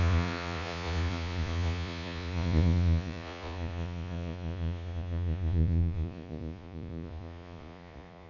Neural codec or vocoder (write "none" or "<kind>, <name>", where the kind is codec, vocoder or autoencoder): vocoder, Vocos